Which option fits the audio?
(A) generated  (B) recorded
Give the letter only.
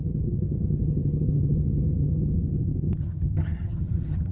A